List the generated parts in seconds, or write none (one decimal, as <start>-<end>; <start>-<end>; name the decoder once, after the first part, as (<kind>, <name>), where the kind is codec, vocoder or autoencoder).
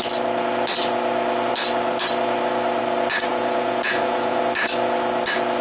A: 3.3-4.4 (vocoder, Vocos)